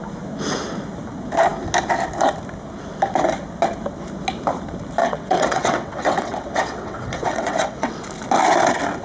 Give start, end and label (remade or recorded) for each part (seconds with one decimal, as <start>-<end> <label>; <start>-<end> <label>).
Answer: 0.0-5.0 recorded; 5.0-7.9 remade; 7.9-9.0 recorded